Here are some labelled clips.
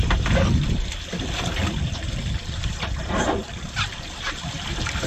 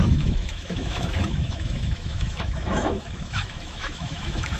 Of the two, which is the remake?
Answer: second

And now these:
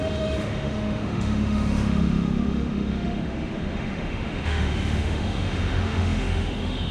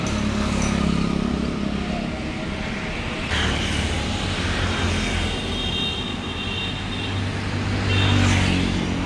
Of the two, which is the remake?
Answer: first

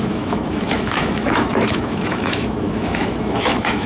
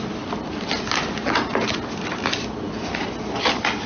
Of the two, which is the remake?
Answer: first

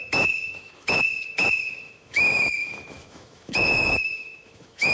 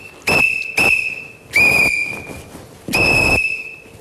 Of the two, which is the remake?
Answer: first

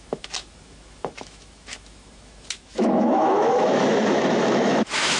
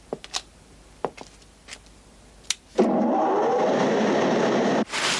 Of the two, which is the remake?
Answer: first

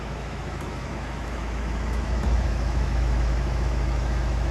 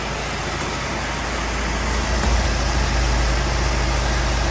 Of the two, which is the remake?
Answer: first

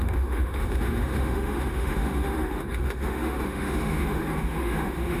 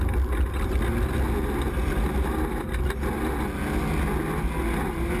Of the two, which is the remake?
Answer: first